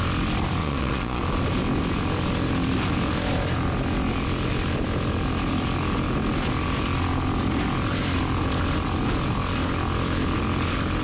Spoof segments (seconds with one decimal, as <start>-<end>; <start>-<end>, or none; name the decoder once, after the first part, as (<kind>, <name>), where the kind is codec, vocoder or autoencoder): 0.6-1.2 (vocoder, Vocos)